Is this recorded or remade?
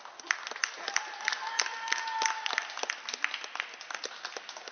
recorded